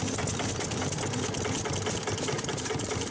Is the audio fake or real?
real